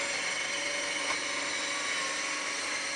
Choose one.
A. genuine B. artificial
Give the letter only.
A